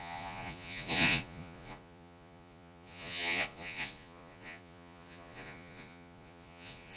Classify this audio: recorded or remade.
remade